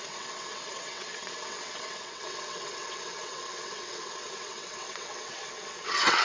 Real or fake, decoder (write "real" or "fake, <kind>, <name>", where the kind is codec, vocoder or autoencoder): fake, vocoder, WaveNeXt